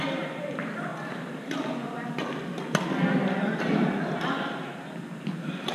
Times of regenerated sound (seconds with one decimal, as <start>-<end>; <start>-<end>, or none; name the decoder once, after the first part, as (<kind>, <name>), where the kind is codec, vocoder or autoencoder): none